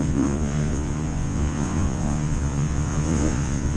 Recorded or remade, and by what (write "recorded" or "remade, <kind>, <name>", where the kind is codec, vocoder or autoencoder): remade, vocoder, Vocos